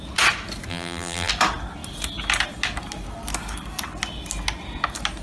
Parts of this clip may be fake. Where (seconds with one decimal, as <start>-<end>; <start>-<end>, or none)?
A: 0.7-1.3